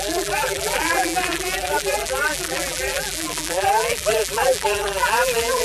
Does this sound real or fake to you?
fake